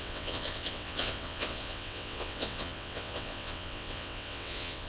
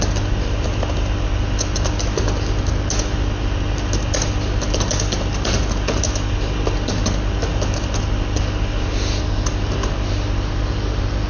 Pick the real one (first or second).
second